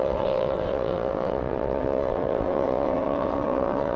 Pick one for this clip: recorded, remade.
remade